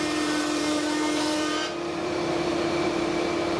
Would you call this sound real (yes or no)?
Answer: no